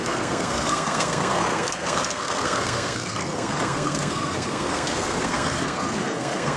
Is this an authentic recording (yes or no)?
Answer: no